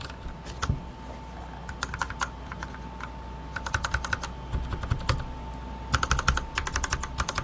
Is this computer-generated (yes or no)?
no